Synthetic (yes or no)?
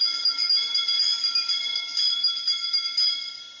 yes